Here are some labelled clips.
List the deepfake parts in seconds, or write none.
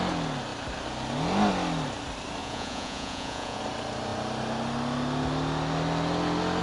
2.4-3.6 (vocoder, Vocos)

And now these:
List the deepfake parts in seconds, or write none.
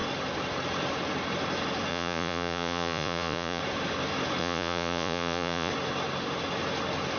1.9-3.6 (vocoder, Vocos); 4.4-5.7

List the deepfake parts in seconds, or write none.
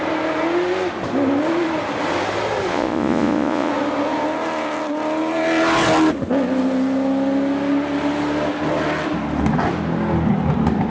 2.7-3.7 (vocoder, Vocos)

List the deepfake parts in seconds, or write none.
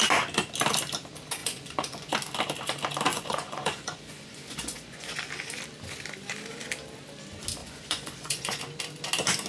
1.4-2.1 (vocoder, Vocos); 3.1-5.3; 7.6-8.6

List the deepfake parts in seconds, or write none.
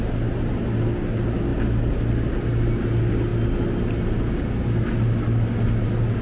none